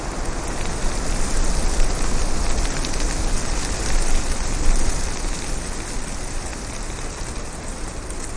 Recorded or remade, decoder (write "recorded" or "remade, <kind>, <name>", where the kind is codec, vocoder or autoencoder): recorded